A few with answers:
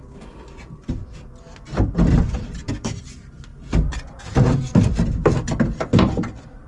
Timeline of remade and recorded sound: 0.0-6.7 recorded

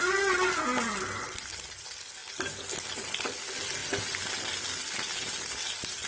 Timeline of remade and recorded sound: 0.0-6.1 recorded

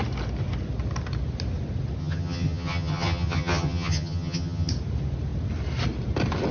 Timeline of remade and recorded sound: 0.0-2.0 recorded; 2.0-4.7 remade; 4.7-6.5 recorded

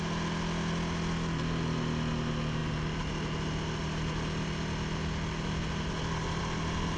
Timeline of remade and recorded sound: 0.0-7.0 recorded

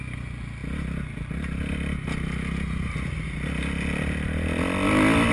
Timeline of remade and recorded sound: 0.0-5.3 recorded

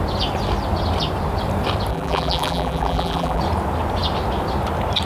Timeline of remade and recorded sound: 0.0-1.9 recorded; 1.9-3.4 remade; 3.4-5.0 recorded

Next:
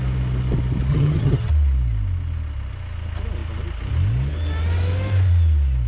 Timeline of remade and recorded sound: 0.0-0.9 recorded; 0.9-1.5 remade; 1.5-5.9 recorded